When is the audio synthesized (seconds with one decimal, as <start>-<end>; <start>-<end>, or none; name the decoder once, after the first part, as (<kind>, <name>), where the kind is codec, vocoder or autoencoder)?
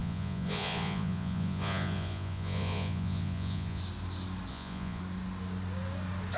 0.0-3.8 (vocoder, Vocos); 4.5-5.0